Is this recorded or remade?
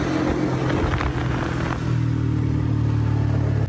recorded